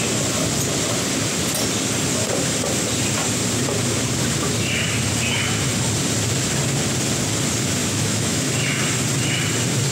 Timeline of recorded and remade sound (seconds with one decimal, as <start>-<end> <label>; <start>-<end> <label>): 0.0-7.8 recorded; 7.8-8.5 remade; 8.5-9.9 recorded